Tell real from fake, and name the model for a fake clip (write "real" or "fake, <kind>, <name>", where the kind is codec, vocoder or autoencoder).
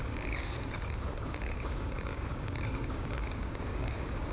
fake, codec, DAC